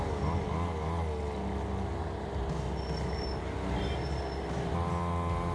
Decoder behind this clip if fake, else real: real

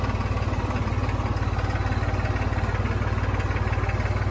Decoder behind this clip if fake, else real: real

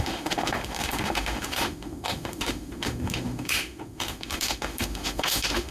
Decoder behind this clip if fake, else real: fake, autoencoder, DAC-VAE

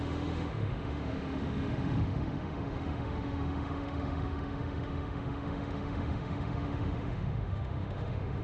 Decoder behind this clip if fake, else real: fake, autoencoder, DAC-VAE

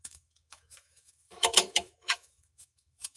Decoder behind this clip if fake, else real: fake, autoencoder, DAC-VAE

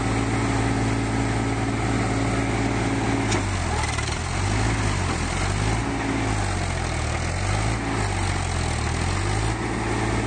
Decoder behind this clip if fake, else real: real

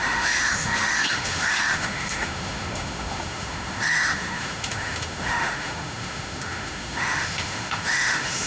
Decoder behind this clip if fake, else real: fake, autoencoder, DAC-VAE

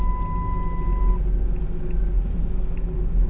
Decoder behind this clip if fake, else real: real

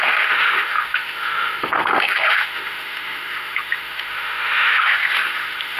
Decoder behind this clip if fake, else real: fake, autoencoder, DAC-VAE